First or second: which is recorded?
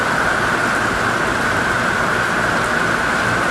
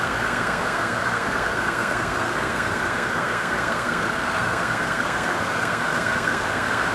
first